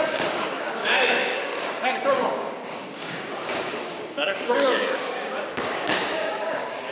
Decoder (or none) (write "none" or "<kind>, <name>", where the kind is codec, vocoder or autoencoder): codec, DAC